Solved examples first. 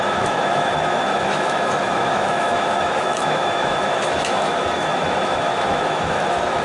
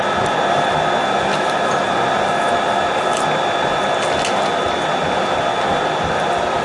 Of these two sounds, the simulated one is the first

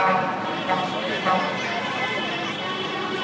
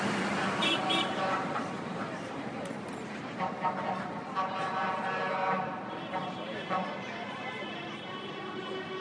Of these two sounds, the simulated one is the second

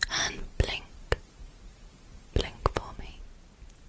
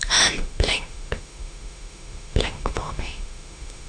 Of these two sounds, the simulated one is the second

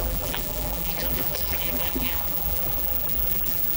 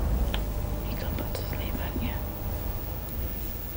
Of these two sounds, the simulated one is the first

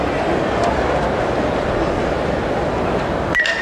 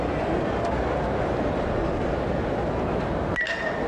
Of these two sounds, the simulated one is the first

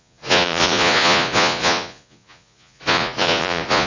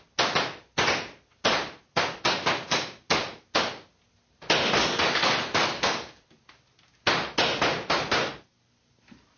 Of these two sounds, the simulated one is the first